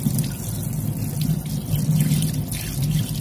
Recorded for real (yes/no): yes